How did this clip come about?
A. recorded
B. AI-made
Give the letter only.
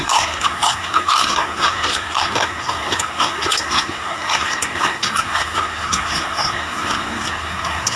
B